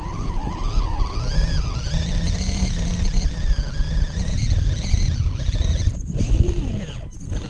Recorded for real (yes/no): yes